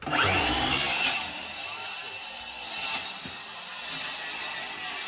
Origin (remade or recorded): recorded